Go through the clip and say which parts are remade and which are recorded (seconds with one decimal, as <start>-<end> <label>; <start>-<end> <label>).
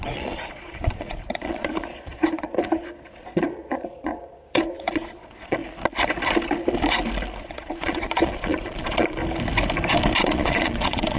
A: 0.0-5.6 remade; 5.6-7.4 recorded; 7.4-9.2 remade; 9.2-10.2 recorded; 10.2-11.2 remade